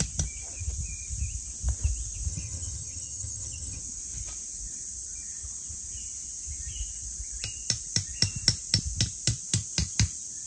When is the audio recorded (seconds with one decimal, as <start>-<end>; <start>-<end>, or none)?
0.0-2.3; 3.8-10.5